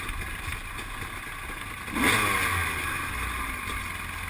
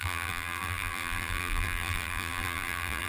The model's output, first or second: second